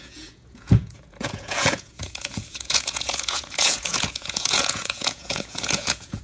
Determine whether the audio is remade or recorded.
remade